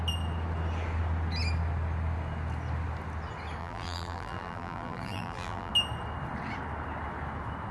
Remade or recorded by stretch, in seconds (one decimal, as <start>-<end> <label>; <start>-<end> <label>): 0.0-3.6 recorded; 3.6-5.7 remade; 5.7-7.7 recorded